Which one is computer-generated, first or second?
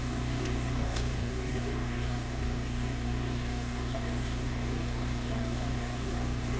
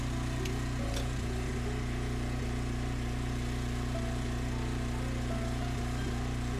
first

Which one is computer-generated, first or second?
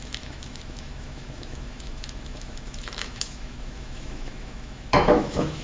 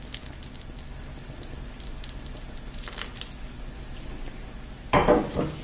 first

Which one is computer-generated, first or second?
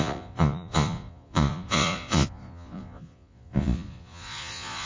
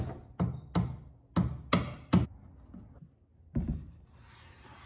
first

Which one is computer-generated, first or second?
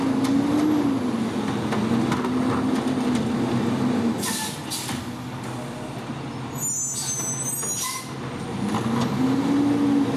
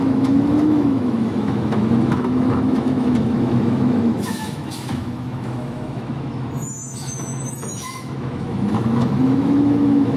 second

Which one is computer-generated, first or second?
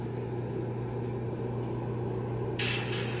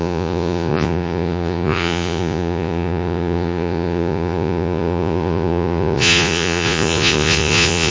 second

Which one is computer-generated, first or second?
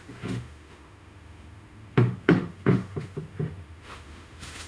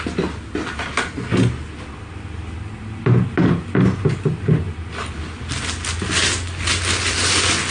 first